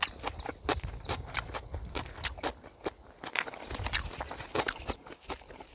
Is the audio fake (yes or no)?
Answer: no